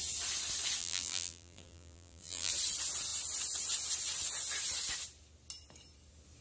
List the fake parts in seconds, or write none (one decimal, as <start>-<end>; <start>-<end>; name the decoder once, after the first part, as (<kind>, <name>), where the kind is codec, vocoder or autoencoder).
0.8-2.5 (vocoder, BigVGAN v2)